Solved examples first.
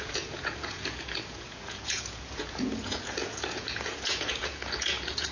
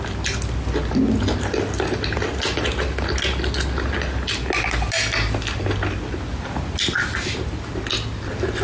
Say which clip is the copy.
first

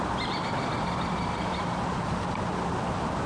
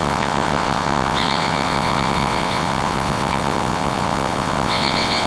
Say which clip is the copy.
second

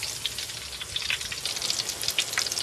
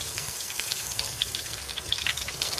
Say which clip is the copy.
second